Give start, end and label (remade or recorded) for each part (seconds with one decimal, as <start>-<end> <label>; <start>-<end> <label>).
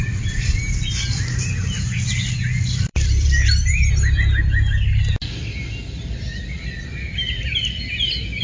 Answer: 0.0-2.9 recorded; 2.9-3.9 remade; 3.9-8.4 recorded